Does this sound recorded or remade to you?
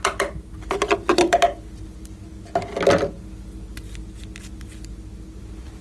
recorded